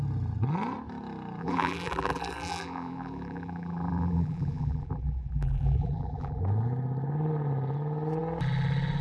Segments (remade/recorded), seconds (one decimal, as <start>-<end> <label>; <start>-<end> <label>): 0.0-1.4 recorded; 1.4-6.4 remade; 6.4-9.0 recorded

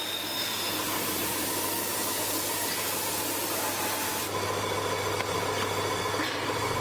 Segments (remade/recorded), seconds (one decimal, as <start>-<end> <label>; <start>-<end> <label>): 0.0-6.8 recorded

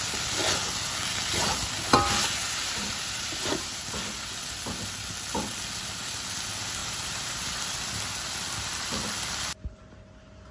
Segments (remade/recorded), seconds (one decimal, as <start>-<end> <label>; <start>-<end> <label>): 0.0-2.4 recorded; 2.4-3.8 remade; 3.8-6.8 recorded; 6.8-7.5 remade; 7.5-10.5 recorded

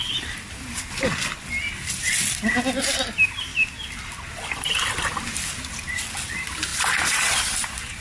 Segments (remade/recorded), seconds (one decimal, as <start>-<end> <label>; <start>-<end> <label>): 0.0-2.8 recorded; 2.8-3.5 remade; 3.5-6.3 recorded; 6.3-8.0 remade